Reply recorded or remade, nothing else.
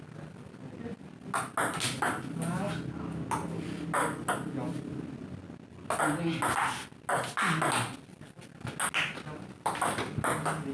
recorded